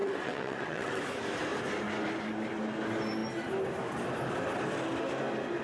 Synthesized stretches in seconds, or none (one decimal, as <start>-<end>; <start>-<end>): 0.0-1.0